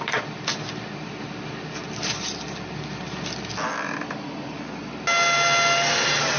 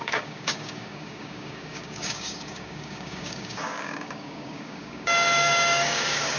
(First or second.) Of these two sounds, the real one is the first